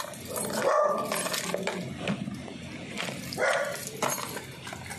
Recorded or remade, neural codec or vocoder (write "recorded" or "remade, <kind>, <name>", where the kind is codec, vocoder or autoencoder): recorded